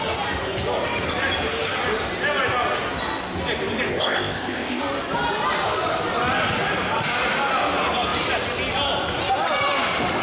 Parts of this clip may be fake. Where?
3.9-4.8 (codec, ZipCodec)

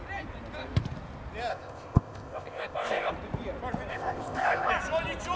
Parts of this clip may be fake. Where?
1.5-3.1 (codec, ZipCodec); 3.9-4.7

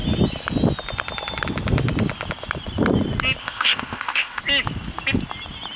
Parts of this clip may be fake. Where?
3.4-4.4 (codec, ZipCodec)

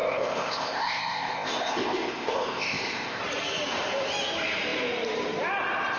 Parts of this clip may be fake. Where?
0.0-3.2 (codec, ZipCodec)

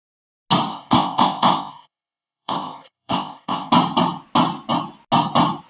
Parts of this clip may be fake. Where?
0.7-3.7 (codec, ZipCodec)

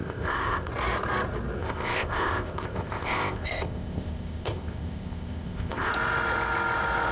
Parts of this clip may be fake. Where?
0.0-0.7 (codec, ZipCodec); 1.6-5.9